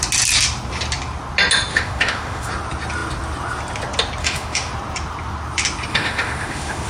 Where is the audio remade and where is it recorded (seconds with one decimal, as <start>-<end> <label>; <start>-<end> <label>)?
0.0-1.7 recorded; 1.7-2.5 remade; 2.5-4.2 recorded; 4.2-4.7 remade; 4.7-5.9 recorded; 5.9-6.9 remade